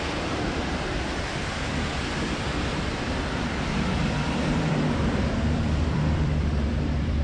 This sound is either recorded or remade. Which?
remade